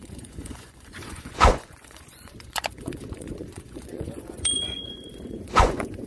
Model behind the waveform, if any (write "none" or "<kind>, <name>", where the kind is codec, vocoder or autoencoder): vocoder, Vocos